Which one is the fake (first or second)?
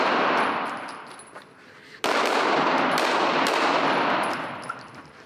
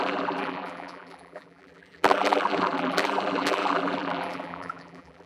second